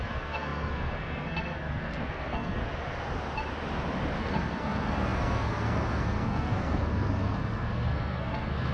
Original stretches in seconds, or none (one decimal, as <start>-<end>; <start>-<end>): 2.6-4.2